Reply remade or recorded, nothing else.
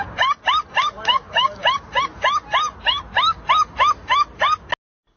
recorded